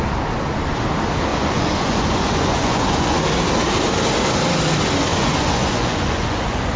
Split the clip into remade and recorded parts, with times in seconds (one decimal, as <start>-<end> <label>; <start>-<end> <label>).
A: 0.0-1.3 recorded; 1.3-3.2 remade; 3.2-5.1 recorded; 5.1-6.8 remade